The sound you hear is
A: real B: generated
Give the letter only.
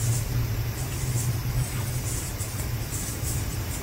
A